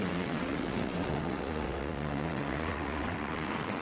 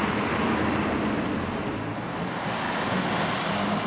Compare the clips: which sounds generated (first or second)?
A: first